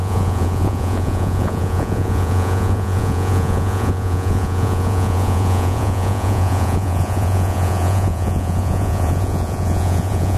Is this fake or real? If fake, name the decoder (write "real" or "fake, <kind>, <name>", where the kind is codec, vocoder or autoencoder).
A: fake, vocoder, Vocos